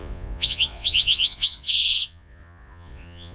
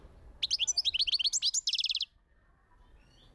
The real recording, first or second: second